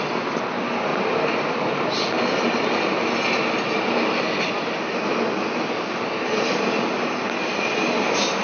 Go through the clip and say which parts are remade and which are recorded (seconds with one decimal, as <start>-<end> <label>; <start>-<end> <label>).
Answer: 0.0-8.4 recorded